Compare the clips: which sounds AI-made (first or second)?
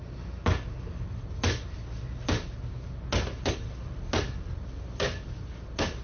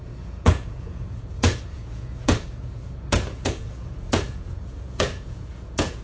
second